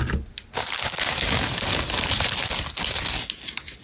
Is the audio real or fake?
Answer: real